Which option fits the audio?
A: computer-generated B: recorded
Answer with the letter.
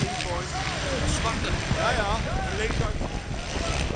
B